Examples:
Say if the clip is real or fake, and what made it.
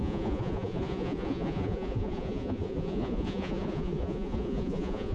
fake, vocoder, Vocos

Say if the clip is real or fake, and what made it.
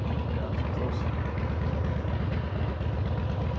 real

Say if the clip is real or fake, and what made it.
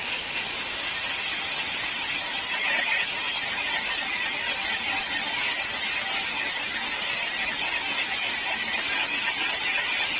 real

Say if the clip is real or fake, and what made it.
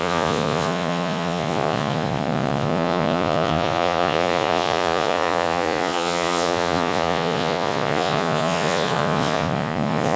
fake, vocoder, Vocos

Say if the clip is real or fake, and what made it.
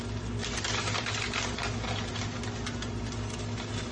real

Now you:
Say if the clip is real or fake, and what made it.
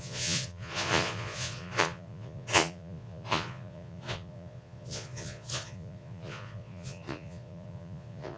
fake, vocoder, Vocos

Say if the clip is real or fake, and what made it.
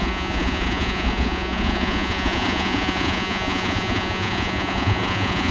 fake, vocoder, Vocos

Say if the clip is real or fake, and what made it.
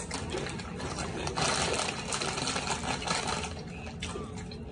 real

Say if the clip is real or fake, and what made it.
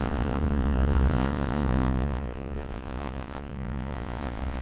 fake, vocoder, Vocos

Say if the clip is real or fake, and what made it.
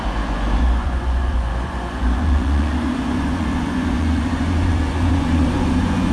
fake, vocoder, Vocos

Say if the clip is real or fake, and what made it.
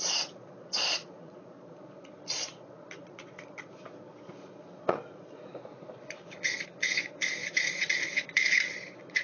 fake, vocoder, Vocos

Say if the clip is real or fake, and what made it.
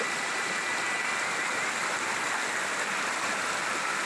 real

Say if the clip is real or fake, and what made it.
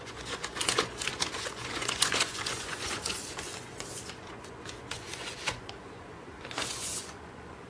fake, vocoder, Vocos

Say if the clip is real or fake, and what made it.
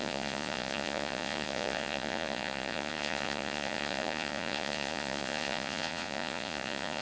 fake, vocoder, Vocos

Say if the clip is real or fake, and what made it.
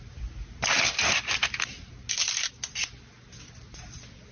real